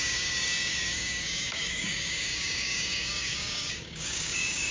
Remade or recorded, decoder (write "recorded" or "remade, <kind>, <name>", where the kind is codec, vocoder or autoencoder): remade, codec, DAC